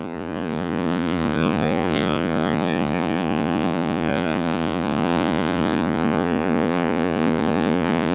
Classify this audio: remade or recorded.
remade